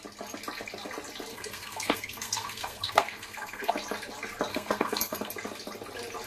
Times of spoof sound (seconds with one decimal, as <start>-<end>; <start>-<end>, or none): 1.3-3.7; 4.5-5.3